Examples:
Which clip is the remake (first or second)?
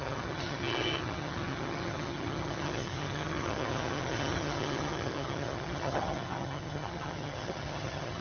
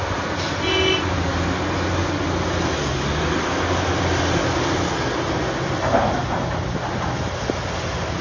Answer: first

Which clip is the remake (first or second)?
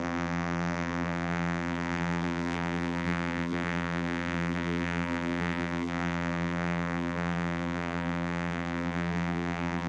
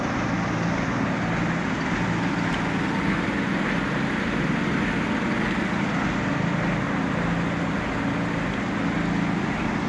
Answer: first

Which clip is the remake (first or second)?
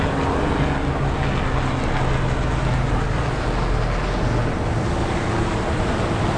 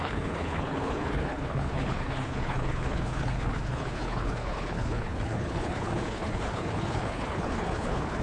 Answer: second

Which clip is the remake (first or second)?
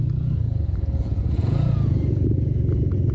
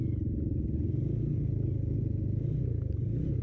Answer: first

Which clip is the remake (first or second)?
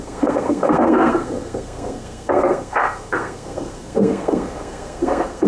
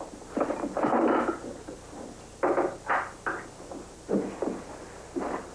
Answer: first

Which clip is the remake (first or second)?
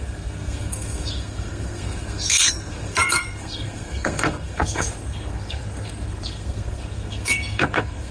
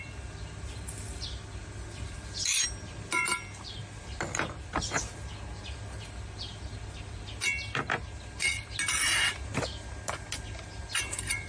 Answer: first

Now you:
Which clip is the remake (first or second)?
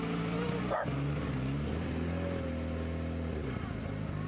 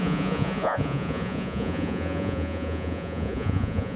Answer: second